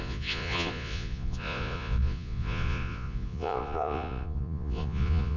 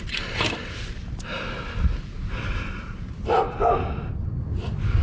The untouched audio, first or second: second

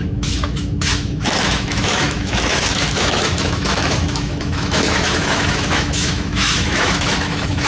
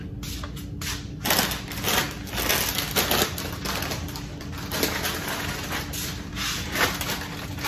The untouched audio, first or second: second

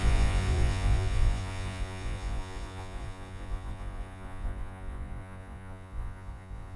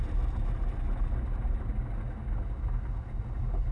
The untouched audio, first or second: second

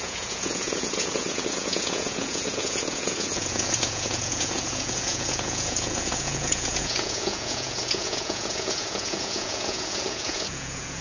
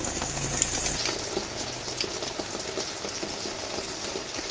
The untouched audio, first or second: second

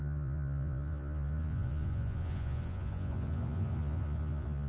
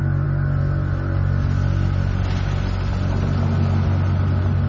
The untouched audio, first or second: second